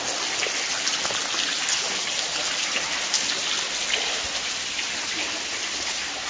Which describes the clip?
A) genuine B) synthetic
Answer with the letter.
A